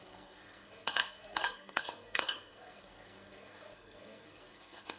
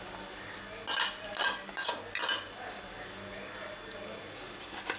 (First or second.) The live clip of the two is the second